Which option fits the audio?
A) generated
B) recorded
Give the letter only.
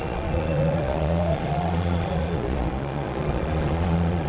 A